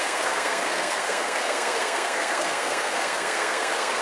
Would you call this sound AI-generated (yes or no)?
yes